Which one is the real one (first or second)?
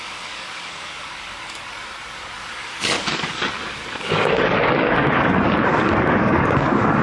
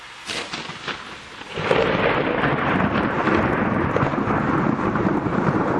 second